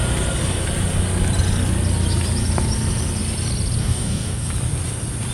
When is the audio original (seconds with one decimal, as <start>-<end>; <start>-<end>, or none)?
0.0-3.8; 4.5-5.3